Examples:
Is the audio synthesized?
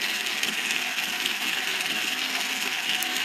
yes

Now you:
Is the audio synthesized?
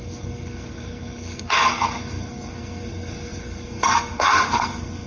yes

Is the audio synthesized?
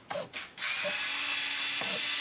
no